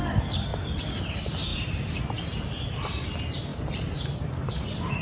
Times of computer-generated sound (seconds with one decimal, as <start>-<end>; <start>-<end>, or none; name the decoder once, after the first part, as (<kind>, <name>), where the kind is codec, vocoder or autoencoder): 0.5-1.0 (vocoder, BigVGAN v2); 1.5-2.0; 3.5-5.0